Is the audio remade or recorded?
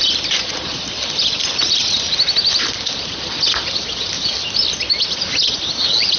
recorded